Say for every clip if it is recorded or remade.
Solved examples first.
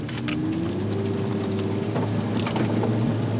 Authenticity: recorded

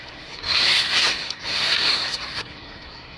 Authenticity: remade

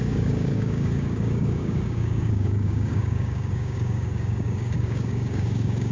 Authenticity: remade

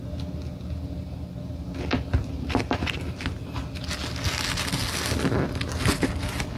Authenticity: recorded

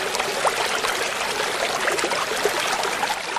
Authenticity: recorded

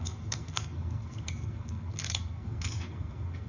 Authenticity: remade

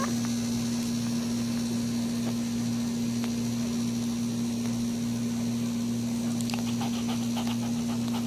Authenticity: recorded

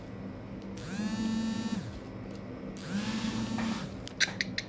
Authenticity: recorded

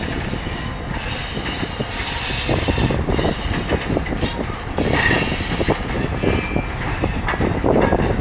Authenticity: recorded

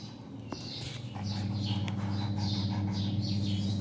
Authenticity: recorded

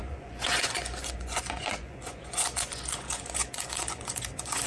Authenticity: remade